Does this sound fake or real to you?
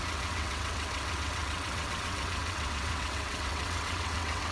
fake